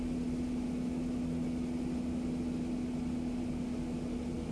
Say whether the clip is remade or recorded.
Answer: recorded